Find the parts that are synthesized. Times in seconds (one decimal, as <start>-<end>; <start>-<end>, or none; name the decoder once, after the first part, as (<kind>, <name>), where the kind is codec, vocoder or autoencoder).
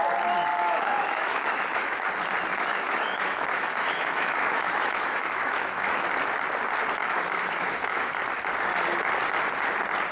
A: 0.5-2.1 (autoencoder, DAC-VAE); 2.7-6.1; 7.0-8.1